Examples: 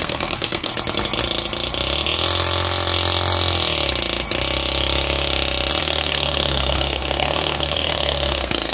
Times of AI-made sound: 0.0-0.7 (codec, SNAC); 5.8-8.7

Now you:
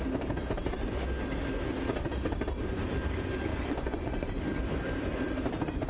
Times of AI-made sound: 3.5-4.3 (vocoder, Vocos)

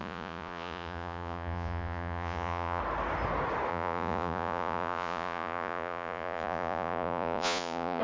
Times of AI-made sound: 0.0-2.8 (vocoder, Vocos); 3.7-8.0

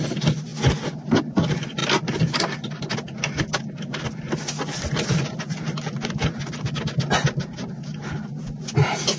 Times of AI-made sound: none

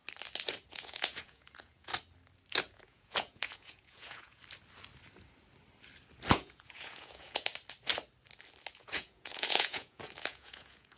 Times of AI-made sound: 0.7-1.9 (vocoder, Vocos); 2.7-4.4; 6.3-7.5; 8.7-11.0

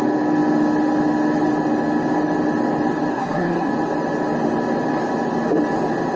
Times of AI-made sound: 3.1-3.7 (codec, SNAC)

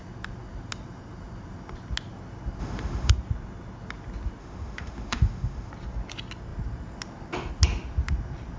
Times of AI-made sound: 2.6-3.1 (autoencoder, DAC-VAE); 4.4-5.7

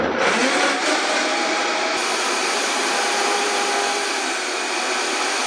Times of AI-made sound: 0.4-3.7 (vocoder, BigVGAN v2)